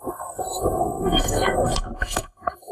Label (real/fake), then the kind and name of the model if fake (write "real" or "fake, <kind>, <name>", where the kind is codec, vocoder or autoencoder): fake, codec, SNAC